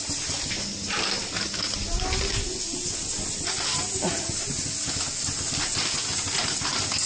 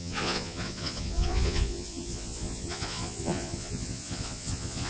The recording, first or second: first